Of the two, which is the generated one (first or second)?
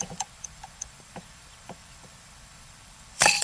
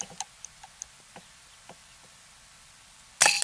first